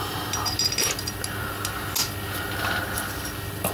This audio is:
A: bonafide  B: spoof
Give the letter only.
A